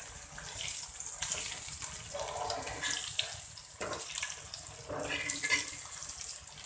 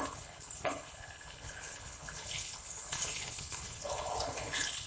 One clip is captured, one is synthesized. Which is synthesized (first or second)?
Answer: second